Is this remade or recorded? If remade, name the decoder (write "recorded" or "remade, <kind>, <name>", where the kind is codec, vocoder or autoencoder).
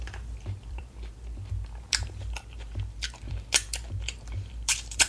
remade, vocoder, BigVGAN v2